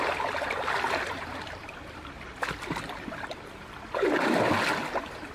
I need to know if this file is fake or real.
fake